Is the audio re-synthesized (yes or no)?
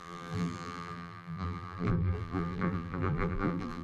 yes